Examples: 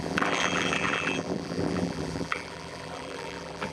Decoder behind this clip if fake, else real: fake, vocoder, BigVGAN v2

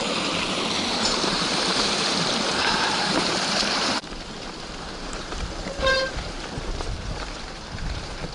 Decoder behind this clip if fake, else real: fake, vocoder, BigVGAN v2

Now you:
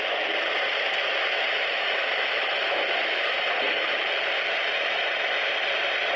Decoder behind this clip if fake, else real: fake, vocoder, BigVGAN v2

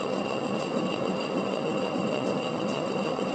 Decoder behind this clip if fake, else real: fake, vocoder, WaveNeXt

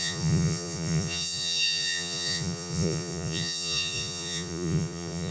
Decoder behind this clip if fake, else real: fake, vocoder, Vocos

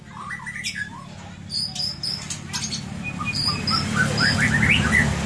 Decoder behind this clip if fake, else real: real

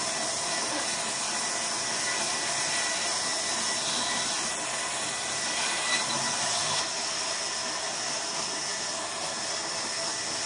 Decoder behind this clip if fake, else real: real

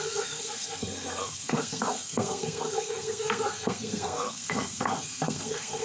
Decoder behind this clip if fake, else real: fake, codec, SNAC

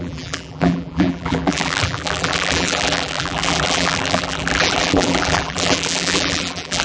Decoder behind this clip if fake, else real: fake, vocoder, BigVGAN v2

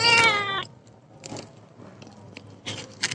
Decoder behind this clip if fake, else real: fake, vocoder, BigVGAN v2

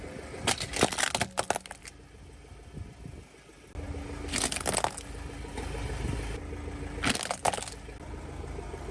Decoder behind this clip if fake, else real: real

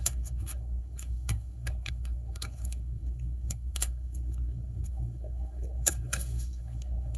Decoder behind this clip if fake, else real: fake, codec, SNAC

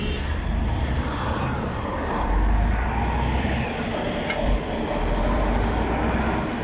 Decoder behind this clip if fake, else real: fake, vocoder, BigVGAN v2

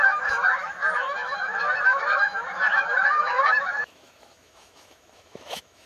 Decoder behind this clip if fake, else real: fake, autoencoder, DAC-VAE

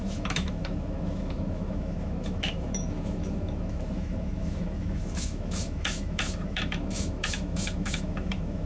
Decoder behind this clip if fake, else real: fake, autoencoder, DAC-VAE